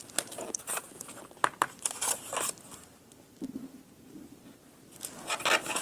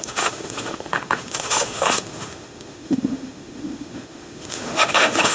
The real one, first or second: first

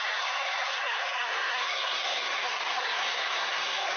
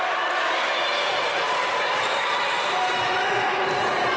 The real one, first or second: second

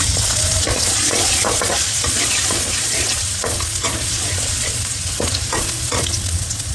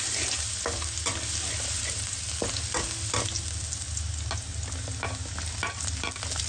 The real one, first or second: second